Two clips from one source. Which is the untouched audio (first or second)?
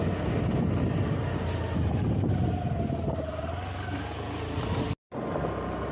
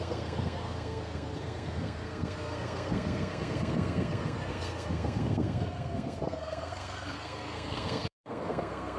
first